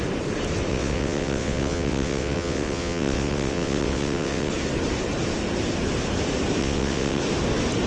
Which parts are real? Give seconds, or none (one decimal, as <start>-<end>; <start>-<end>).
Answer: 0.0-0.7; 4.5-6.6; 7.2-7.9